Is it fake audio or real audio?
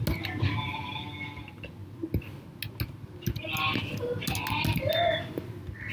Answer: real